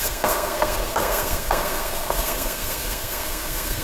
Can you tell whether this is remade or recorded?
remade